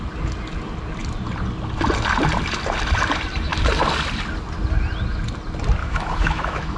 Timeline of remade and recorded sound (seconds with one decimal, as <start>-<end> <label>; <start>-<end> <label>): 0.0-5.8 recorded; 5.8-6.8 remade